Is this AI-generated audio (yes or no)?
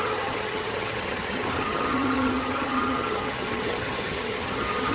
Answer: yes